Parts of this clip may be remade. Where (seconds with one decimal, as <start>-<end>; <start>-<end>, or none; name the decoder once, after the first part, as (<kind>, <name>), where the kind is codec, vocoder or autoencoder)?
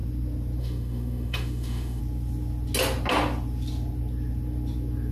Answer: 0.6-2.0 (autoencoder, DAC-VAE)